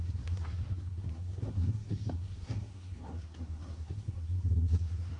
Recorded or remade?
remade